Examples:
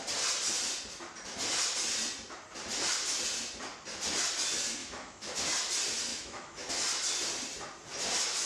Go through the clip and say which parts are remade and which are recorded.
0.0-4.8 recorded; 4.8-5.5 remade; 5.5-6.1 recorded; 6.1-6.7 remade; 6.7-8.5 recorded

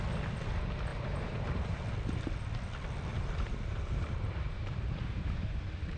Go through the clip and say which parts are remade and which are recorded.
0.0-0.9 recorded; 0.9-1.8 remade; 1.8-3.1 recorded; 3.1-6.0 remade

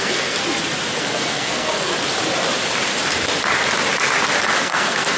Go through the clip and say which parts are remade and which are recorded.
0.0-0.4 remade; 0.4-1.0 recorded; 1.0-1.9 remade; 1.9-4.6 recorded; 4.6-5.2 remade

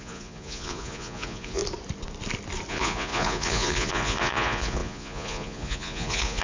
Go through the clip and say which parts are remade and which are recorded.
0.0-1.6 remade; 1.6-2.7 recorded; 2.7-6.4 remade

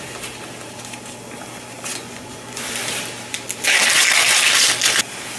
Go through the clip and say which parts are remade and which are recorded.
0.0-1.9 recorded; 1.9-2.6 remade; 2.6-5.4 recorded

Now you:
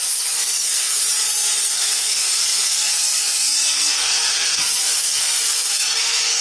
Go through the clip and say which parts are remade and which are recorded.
0.0-1.0 remade; 1.0-1.6 recorded; 1.6-6.4 remade

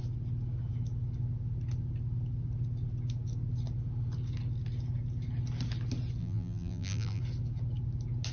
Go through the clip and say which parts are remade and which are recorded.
0.0-6.2 recorded; 6.2-7.2 remade; 7.2-8.3 recorded